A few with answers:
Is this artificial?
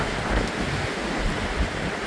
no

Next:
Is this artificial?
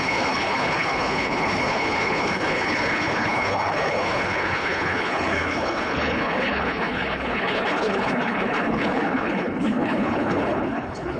yes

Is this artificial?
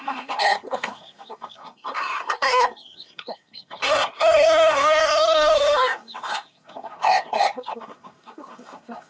yes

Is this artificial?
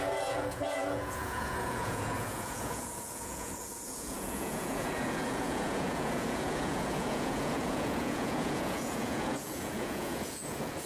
yes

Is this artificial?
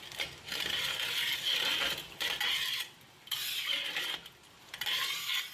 no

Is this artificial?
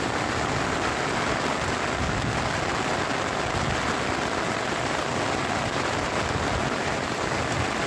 no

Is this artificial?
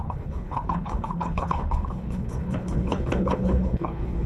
yes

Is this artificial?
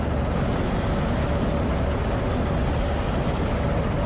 no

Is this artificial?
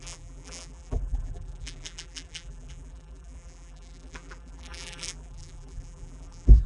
yes